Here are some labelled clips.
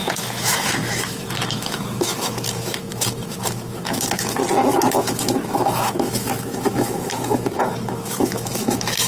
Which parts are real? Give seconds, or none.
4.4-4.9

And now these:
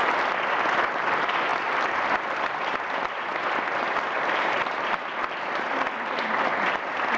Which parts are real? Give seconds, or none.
0.0-7.2

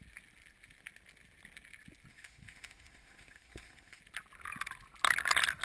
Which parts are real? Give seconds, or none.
0.0-2.1; 4.0-5.6

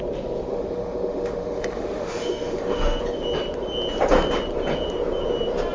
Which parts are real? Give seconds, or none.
0.0-0.5; 3.0-5.7

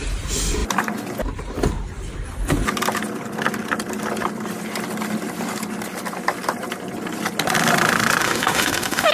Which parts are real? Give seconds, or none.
0.0-8.2

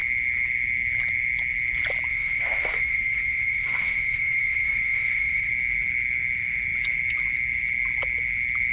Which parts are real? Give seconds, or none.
0.0-2.1; 5.5-8.7

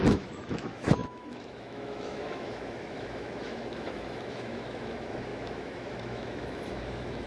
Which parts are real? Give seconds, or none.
none